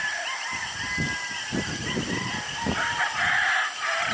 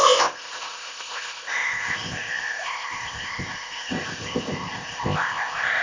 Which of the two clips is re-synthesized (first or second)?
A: second